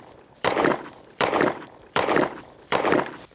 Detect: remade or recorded remade